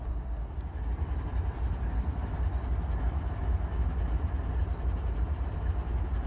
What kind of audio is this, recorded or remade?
recorded